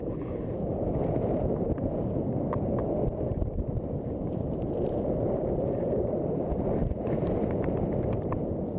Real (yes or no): no